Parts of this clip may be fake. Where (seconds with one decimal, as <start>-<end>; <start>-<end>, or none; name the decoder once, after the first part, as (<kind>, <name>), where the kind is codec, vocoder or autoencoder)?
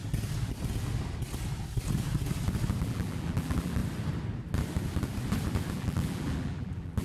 2.8-3.8 (vocoder, BigVGAN v2); 5.7-7.0